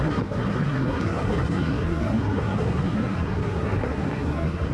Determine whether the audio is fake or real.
fake